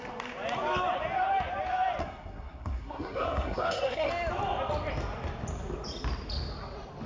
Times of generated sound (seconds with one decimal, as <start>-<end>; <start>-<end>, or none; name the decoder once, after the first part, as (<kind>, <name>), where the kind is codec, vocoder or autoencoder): 2.0-4.1 (codec, SNAC)